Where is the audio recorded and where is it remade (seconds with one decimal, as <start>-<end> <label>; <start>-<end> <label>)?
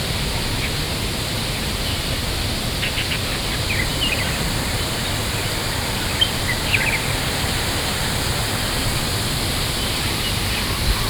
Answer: 0.0-3.9 recorded; 3.9-6.4 remade; 6.4-11.1 recorded